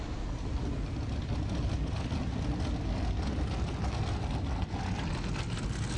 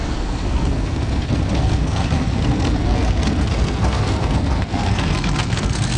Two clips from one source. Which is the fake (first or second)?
second